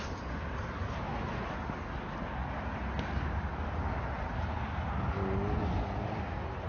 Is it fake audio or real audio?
real